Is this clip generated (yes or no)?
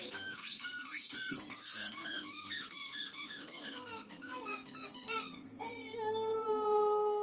yes